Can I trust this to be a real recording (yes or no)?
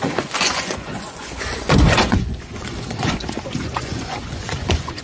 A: no